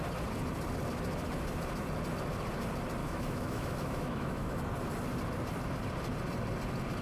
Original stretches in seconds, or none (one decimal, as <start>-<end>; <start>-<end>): 0.0-3.0; 4.6-7.0